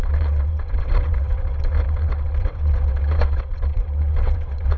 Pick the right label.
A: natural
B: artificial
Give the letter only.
B